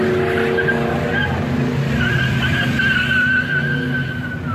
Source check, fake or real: real